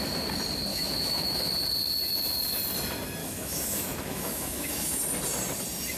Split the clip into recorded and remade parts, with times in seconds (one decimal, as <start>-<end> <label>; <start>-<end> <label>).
0.0-0.7 recorded; 0.7-1.5 remade; 1.5-3.2 recorded; 3.2-5.0 remade; 5.0-6.0 recorded